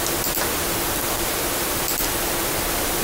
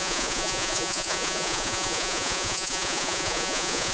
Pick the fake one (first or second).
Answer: second